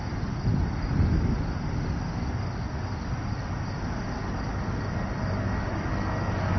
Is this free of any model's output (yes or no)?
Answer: yes